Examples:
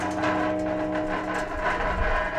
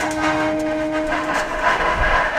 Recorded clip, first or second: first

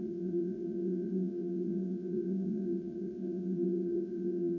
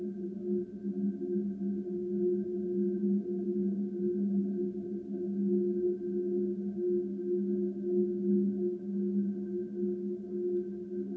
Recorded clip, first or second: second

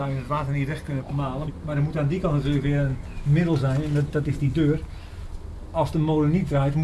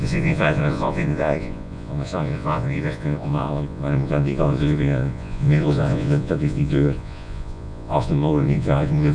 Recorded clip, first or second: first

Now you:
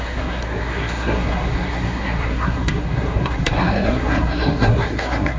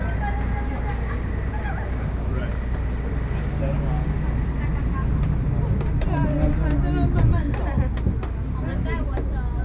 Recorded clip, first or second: second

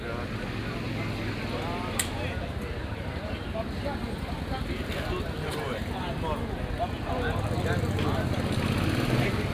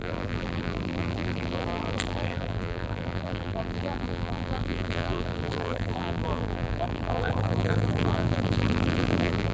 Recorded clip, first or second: first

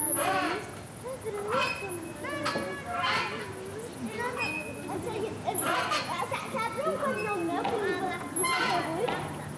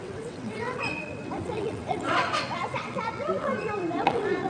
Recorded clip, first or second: first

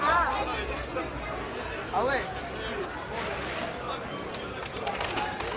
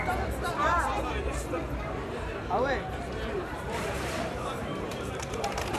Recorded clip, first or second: first